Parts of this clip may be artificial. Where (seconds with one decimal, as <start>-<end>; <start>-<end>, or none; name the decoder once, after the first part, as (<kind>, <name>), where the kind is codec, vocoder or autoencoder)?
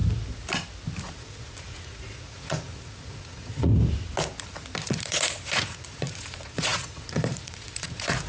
1.0-3.7 (vocoder, Vocos); 4.8-8.3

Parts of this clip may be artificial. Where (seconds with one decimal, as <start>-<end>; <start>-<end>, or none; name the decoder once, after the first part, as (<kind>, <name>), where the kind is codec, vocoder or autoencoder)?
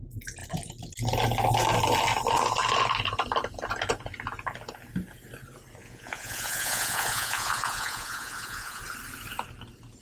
5.8-8.8 (vocoder, Vocos)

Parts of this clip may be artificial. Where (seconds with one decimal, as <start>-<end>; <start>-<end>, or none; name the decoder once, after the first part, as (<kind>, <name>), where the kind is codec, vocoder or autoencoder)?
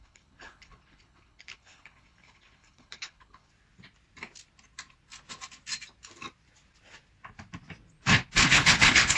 0.0-3.5 (codec, HILCodec); 8.3-9.2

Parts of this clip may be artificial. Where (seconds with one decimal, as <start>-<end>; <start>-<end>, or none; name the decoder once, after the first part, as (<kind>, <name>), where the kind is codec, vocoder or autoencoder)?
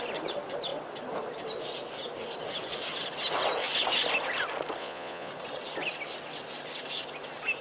4.8-5.3 (vocoder, Vocos)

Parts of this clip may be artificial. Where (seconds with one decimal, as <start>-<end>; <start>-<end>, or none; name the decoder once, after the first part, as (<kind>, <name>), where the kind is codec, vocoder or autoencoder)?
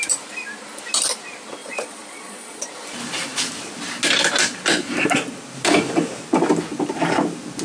1.6-2.7 (vocoder, Vocos)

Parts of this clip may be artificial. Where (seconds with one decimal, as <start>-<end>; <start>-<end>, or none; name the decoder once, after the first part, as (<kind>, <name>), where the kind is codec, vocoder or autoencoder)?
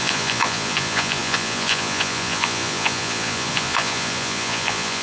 0.0-5.0 (vocoder, Vocos)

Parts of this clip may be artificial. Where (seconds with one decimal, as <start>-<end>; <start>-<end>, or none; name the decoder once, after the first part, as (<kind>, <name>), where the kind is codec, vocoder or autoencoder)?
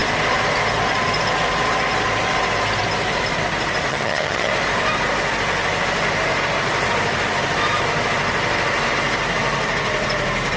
3.9-4.5 (vocoder, HiFi-GAN)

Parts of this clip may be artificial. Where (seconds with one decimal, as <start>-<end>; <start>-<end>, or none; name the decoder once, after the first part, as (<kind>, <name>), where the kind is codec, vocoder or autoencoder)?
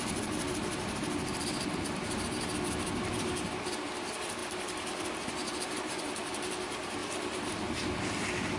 none